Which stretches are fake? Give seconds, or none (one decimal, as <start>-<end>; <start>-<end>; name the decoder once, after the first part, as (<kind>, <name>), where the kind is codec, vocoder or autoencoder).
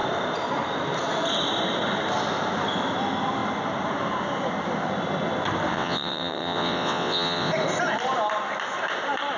5.7-7.5 (vocoder, WaveNeXt)